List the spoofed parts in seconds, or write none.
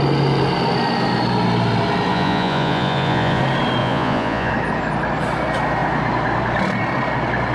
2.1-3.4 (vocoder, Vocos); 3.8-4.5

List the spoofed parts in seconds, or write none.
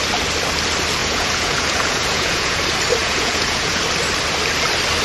1.0-2.6 (vocoder, Vocos); 3.0-3.8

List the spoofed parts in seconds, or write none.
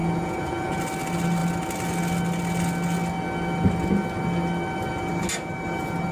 0.0-0.8 (vocoder, Vocos)